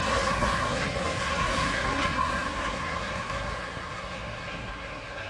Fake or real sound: fake